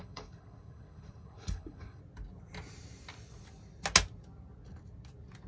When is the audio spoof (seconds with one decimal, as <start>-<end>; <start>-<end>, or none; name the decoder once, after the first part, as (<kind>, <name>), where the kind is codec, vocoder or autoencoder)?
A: 0.0-2.0 (codec, HILCodec)